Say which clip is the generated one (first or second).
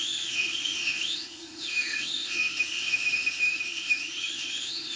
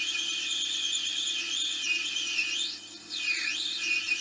first